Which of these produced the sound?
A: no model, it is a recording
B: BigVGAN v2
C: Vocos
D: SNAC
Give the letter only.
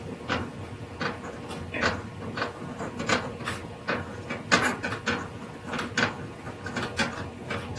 A